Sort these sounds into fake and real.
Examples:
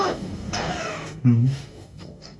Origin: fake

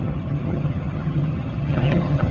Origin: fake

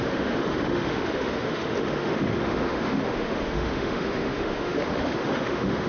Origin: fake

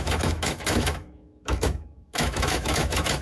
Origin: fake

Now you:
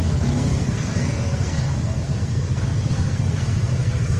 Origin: fake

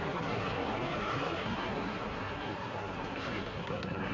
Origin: fake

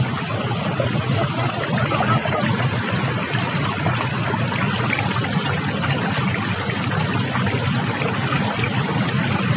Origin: real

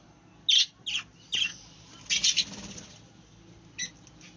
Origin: real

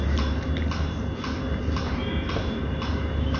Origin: real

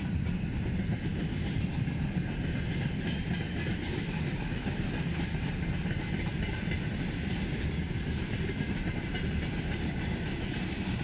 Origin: real